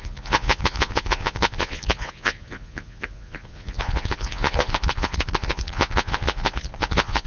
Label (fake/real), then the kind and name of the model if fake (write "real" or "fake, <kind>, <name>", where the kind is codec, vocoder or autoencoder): fake, vocoder, Vocos